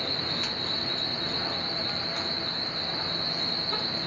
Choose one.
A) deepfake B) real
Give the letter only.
B